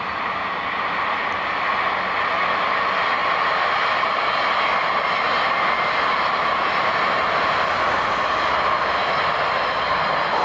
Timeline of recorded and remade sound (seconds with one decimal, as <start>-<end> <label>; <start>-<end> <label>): 0.0-10.4 recorded